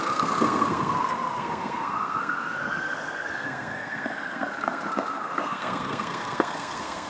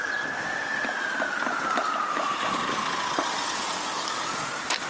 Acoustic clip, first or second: second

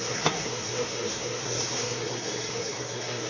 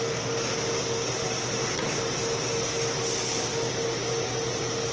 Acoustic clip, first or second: second